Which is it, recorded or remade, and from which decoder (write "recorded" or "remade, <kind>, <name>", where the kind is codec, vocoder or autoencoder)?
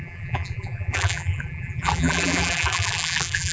remade, vocoder, BigVGAN v2